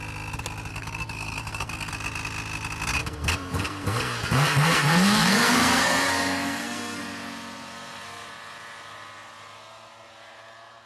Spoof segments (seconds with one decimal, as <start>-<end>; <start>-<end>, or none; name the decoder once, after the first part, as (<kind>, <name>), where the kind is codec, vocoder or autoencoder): 0.7-1.9 (codec, SNAC); 3.0-7.0